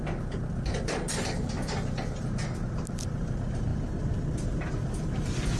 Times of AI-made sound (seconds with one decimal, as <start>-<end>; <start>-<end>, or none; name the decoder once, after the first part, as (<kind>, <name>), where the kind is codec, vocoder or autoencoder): none